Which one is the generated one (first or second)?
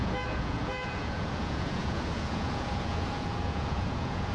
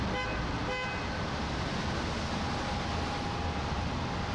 first